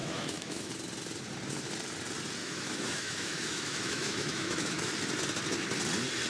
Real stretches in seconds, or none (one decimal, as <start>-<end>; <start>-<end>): 0.7-2.4; 4.9-6.3